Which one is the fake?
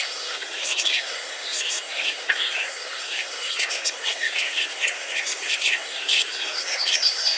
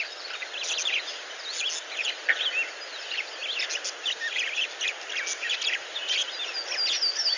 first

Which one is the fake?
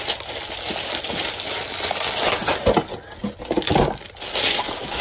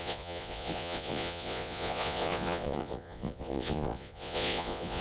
second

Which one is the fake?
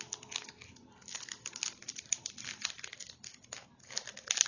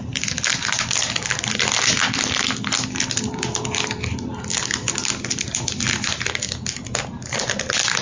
first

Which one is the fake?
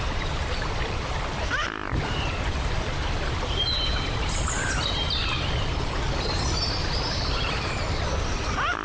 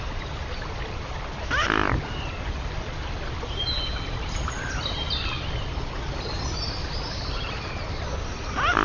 first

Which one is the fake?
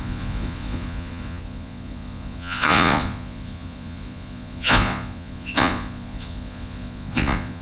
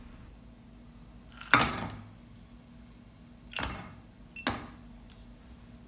first